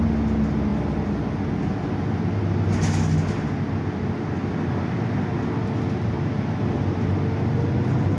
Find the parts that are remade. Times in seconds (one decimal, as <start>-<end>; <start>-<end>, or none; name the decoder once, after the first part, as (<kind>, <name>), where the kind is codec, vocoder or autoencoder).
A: none